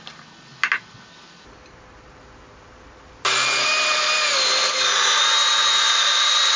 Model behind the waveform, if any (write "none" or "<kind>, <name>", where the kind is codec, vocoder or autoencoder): none